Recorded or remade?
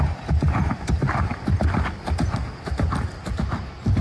recorded